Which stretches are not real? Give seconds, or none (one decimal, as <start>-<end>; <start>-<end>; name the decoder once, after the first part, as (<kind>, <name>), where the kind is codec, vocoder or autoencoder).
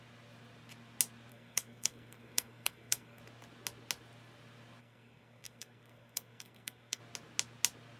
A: 1.3-3.2 (codec, SNAC); 4.8-7.0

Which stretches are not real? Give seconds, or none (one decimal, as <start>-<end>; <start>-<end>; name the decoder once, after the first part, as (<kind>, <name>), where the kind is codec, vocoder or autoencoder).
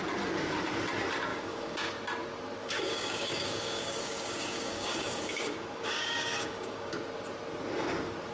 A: 1.3-1.9 (codec, DAC); 2.6-6.9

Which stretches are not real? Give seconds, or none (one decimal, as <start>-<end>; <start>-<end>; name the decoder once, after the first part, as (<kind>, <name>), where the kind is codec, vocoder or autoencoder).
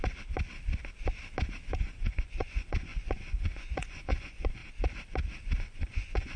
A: 1.8-4.6 (vocoder, Vocos); 5.6-6.4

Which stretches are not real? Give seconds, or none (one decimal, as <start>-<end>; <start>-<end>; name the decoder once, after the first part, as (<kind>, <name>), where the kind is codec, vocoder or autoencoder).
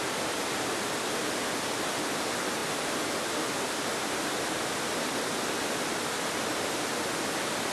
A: none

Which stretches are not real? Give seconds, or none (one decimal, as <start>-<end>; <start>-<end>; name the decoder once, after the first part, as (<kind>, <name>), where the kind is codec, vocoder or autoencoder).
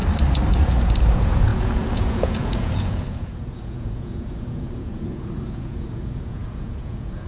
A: 0.5-7.3 (vocoder, Vocos)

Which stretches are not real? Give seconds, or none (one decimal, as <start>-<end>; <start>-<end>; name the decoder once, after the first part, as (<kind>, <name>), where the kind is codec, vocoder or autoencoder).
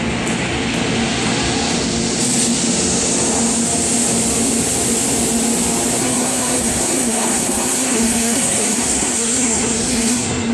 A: 6.0-10.5 (codec, SNAC)